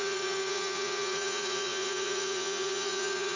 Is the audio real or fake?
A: fake